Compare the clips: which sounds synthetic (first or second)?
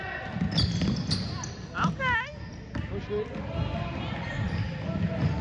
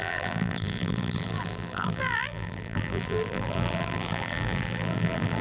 second